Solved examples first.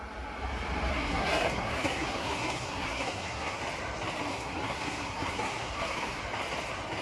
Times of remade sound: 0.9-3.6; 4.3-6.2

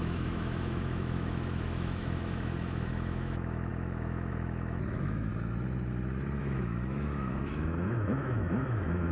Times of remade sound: 0.0-5.3; 6.4-9.1